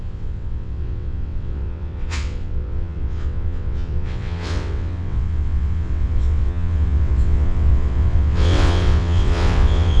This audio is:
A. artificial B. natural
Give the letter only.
A